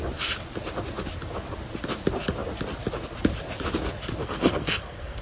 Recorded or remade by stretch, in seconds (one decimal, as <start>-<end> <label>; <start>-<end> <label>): 0.0-4.2 recorded; 4.2-5.2 remade